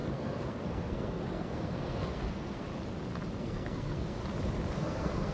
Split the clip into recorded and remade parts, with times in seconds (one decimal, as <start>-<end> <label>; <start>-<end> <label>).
0.0-2.7 remade; 2.7-3.4 recorded; 3.4-4.2 remade; 4.2-4.7 recorded; 4.7-5.3 remade